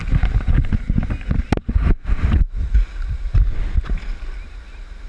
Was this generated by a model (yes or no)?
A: no